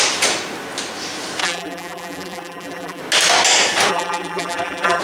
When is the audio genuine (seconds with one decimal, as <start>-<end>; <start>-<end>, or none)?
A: 0.0-1.4; 3.0-3.9